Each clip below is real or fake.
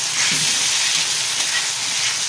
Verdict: real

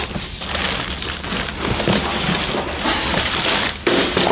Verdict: real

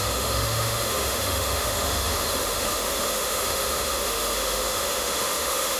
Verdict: fake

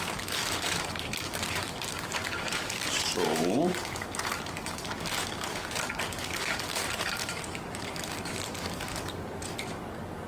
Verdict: fake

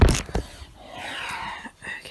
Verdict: real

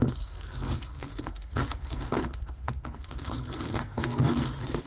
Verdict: fake